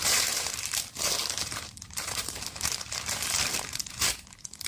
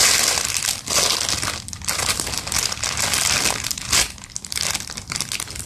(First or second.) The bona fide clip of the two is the second